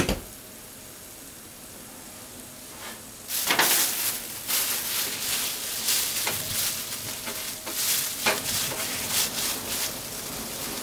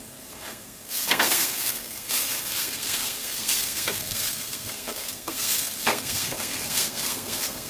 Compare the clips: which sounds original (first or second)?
first